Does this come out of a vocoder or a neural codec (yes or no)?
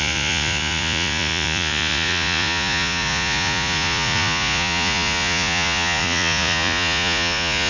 yes